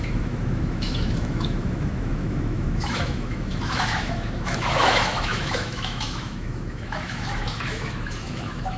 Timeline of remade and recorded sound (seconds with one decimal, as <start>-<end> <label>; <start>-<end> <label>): 0.0-8.8 remade